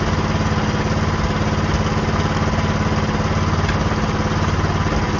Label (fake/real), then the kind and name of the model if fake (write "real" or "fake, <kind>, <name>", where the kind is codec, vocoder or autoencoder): real